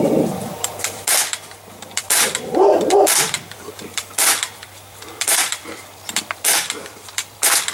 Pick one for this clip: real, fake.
fake